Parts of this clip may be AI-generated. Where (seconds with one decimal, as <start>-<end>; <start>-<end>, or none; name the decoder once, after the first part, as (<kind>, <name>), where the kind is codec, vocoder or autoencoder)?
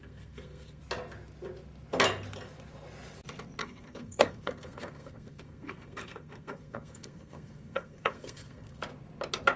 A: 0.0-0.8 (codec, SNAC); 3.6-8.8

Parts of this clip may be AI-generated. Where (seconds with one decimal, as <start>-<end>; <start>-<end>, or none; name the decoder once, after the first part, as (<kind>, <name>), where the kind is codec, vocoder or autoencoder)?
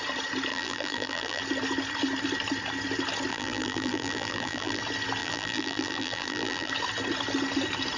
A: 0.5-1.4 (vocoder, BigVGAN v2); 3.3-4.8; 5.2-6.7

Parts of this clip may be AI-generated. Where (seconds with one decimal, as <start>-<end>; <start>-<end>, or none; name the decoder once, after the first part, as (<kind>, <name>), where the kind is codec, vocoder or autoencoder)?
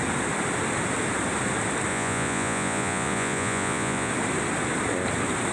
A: 1.9-4.1 (vocoder, Vocos)